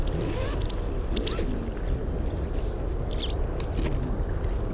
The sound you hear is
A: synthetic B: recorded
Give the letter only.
B